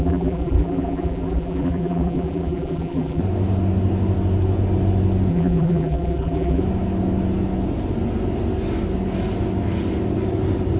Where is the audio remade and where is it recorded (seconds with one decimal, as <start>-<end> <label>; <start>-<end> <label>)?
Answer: 0.0-3.2 remade; 3.2-5.3 recorded; 5.3-6.6 remade; 6.6-10.8 recorded